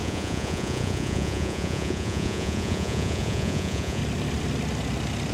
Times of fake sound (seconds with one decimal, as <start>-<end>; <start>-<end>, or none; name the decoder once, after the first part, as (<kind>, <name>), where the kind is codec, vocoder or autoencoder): 0.0-4.0 (vocoder, Vocos)